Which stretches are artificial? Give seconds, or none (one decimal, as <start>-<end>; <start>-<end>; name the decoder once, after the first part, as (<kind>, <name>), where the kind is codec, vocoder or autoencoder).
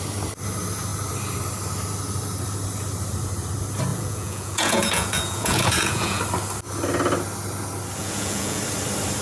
3.9-6.2 (vocoder, Vocos); 8.0-8.6